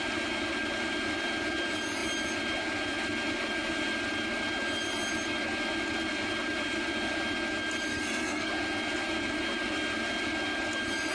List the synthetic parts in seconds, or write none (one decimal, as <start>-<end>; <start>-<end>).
7.9-8.5